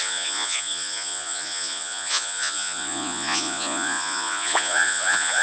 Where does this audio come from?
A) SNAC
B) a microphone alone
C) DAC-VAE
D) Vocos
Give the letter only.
D